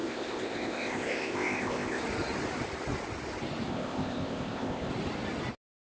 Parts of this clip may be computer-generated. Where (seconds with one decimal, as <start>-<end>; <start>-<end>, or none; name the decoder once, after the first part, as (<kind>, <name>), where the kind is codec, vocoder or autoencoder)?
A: 0.0-2.0 (codec, ZipCodec); 3.7-4.9